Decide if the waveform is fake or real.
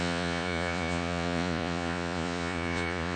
fake